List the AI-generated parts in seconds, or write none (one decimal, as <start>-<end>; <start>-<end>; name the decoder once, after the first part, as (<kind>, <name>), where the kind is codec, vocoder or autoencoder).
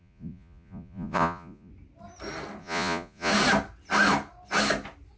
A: 0.0-1.7 (vocoder, Vocos); 2.6-3.3